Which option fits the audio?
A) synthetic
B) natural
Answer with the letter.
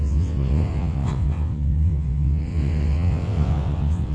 A